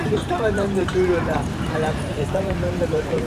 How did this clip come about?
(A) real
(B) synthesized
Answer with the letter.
B